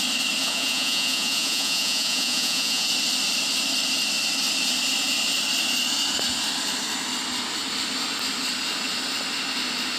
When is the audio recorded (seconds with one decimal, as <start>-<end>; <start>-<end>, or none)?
0.0-0.4; 2.9-10.0